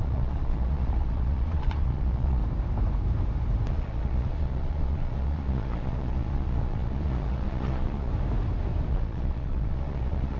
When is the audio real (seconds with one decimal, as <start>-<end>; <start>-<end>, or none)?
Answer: 2.4-3.7; 8.1-8.9